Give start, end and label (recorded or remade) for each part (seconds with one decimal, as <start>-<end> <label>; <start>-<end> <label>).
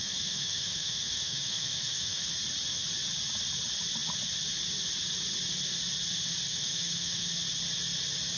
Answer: 0.0-2.3 remade; 2.3-6.5 recorded; 6.5-7.3 remade; 7.3-8.4 recorded